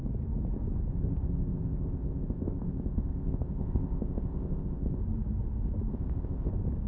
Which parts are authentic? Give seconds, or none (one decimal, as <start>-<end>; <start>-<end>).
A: 0.0-0.9; 5.0-5.9; 6.5-6.9